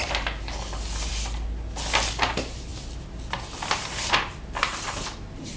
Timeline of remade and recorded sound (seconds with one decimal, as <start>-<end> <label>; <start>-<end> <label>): 0.0-5.6 recorded